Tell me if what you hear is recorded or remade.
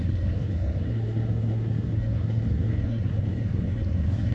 remade